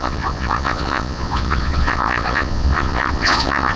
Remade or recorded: remade